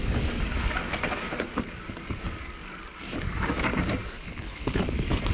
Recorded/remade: remade